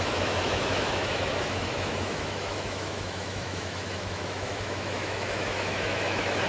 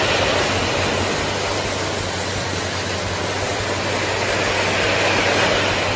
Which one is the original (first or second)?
second